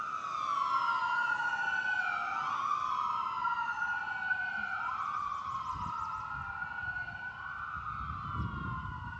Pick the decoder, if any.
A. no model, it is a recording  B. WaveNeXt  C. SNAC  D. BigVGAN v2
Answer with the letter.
A